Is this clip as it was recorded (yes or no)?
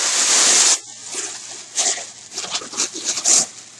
yes